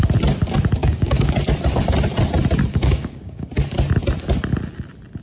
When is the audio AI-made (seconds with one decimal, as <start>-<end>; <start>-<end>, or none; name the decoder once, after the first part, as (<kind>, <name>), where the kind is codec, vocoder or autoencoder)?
0.8-1.3 (codec, DAC); 2.7-3.5